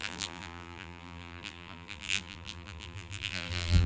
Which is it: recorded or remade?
remade